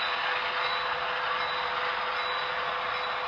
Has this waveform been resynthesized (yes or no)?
no